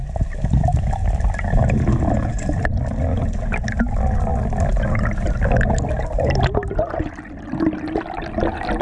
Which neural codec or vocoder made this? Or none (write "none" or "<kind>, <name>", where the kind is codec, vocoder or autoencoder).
none